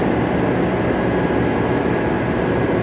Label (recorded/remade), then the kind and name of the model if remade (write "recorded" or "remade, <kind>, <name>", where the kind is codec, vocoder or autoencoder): recorded